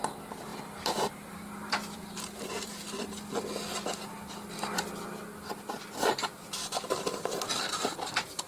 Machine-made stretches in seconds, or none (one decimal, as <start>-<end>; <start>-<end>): 0.5-2.7

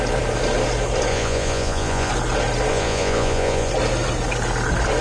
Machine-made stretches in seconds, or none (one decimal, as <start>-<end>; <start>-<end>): 1.1-2.1; 2.7-3.7

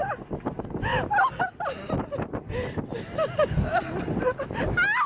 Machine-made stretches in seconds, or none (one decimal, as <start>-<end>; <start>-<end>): none